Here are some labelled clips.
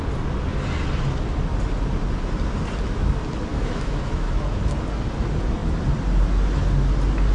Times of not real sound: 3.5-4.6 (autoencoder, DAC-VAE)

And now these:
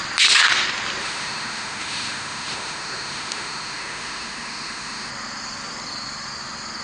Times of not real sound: 1.0-5.1 (autoencoder, DAC-VAE)

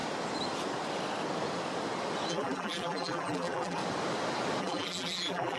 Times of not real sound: 2.3-3.8 (vocoder, BigVGAN v2); 4.6-5.6

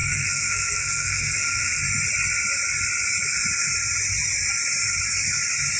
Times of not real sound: 0.0-1.8 (codec, SNAC)

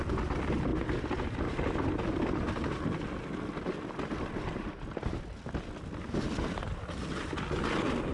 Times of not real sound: none

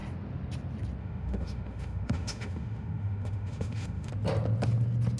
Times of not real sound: 1.0-4.1 (autoencoder, DAC-VAE)

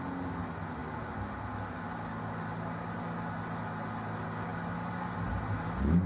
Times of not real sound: none